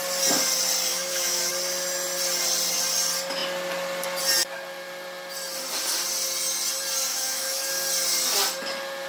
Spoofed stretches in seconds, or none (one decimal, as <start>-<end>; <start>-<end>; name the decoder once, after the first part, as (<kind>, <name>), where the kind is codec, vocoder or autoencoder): 0.9-1.5 (autoencoder, DAC-VAE); 7.1-7.7